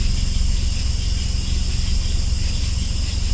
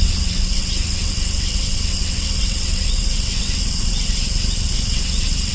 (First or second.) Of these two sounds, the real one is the first